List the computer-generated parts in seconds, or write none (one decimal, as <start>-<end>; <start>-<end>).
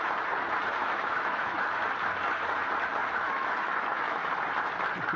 0.8-1.7; 3.0-4.3